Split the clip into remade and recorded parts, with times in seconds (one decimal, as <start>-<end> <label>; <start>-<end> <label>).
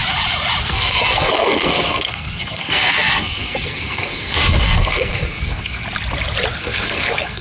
0.0-0.6 recorded; 0.6-5.8 remade; 5.8-6.6 recorded; 6.6-7.4 remade